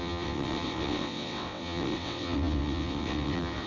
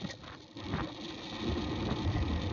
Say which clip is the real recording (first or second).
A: second